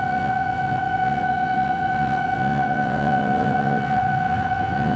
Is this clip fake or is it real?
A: fake